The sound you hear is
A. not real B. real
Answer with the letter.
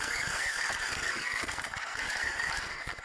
A